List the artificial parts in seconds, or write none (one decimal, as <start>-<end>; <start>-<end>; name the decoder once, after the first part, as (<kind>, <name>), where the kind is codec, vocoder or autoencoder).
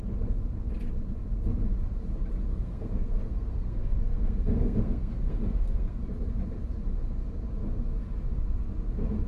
2.5-6.0 (codec, SNAC)